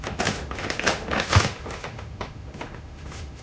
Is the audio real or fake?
fake